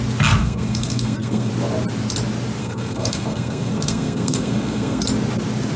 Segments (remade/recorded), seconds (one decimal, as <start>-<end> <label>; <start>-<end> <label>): 0.0-0.4 recorded; 0.4-1.5 remade; 1.5-2.6 recorded; 2.6-5.0 remade; 5.0-5.8 recorded